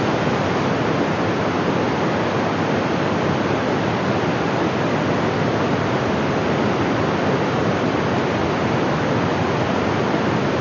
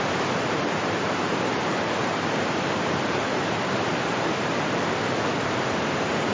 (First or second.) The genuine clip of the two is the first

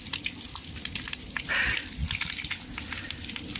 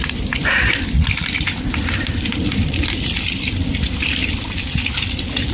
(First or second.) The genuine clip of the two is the first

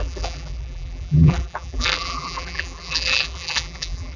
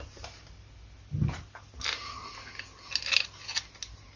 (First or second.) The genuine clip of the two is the second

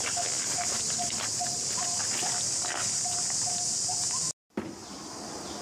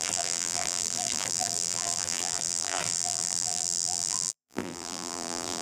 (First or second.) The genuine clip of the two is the first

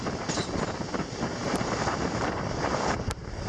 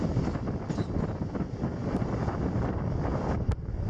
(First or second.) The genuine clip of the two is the second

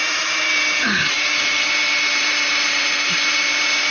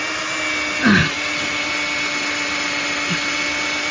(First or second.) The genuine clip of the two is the second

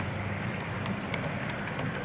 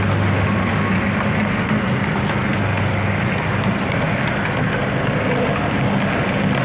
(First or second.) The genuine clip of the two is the second